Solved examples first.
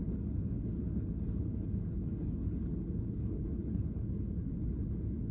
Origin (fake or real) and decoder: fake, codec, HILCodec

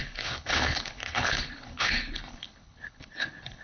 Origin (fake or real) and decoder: fake, codec, HILCodec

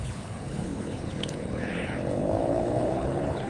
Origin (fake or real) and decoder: fake, codec, HILCodec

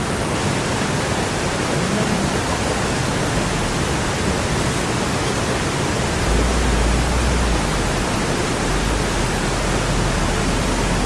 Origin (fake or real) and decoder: real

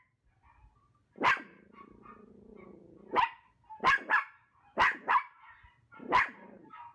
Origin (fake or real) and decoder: real